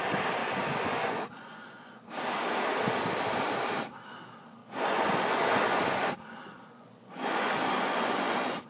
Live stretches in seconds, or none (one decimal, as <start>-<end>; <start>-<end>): 0.0-0.4; 2.0-4.6; 6.1-6.5